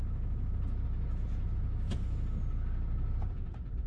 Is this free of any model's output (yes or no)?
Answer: yes